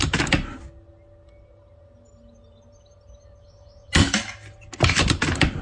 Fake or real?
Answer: real